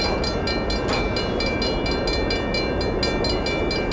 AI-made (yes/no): no